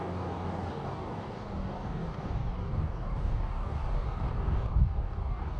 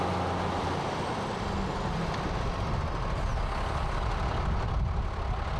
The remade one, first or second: first